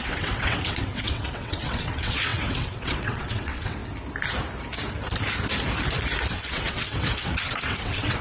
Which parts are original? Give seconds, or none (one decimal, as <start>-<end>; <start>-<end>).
3.8-6.3